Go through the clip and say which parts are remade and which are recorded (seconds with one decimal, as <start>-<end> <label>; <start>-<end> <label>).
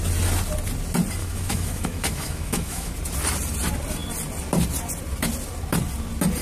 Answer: 0.0-1.2 recorded; 1.2-2.9 remade; 2.9-6.4 recorded